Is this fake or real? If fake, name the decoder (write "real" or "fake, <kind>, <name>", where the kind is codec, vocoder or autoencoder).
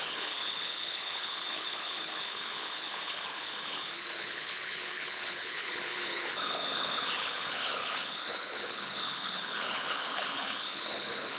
fake, codec, HILCodec